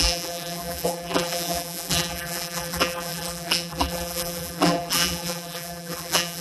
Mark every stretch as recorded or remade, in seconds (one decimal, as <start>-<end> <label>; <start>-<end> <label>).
0.0-6.4 remade